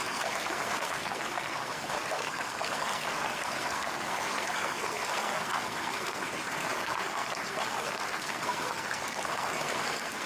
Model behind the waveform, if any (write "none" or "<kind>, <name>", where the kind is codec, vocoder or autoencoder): codec, SNAC